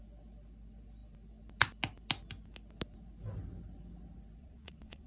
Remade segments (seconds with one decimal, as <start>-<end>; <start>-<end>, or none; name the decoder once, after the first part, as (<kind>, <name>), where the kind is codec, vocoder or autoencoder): 4.4-5.1 (vocoder, WaveNeXt)